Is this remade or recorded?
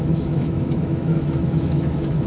remade